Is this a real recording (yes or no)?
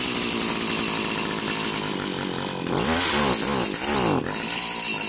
yes